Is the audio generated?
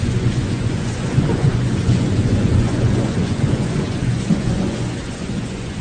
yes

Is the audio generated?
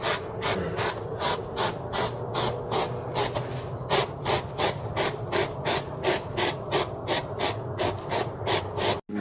no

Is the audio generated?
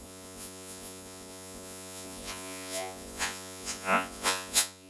yes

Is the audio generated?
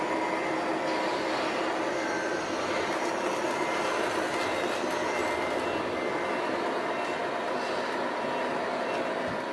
no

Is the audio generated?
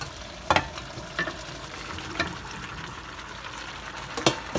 no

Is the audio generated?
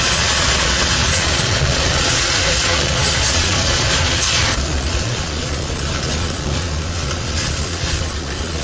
yes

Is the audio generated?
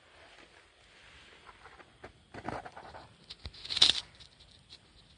no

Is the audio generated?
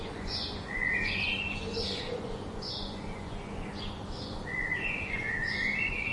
yes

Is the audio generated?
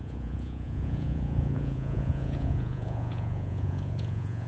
yes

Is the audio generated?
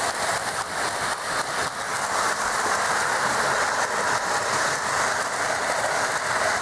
no